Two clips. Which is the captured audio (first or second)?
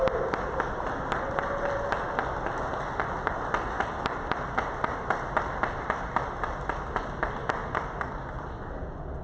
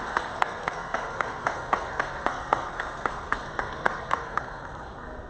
first